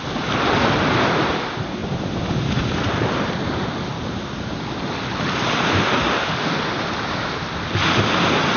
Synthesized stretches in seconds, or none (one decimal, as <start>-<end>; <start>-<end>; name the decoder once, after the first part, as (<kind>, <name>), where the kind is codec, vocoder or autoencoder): none